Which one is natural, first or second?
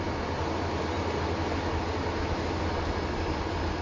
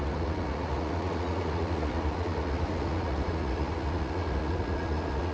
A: first